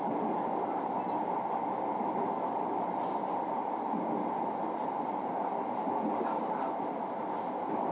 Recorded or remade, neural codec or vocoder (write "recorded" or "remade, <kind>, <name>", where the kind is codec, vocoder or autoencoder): recorded